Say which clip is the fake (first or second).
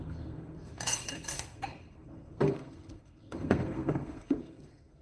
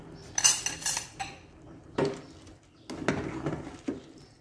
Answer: first